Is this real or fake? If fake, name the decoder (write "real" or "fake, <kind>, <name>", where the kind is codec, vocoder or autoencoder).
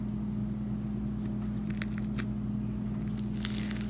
real